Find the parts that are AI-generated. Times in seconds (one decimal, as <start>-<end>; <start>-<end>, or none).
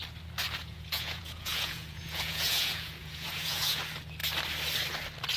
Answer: 0.6-3.8